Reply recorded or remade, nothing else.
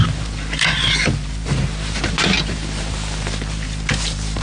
remade